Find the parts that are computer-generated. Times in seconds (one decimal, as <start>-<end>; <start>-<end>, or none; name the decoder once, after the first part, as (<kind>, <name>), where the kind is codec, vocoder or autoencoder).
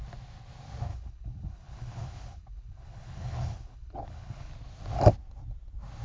0.9-4.5 (codec, HILCodec)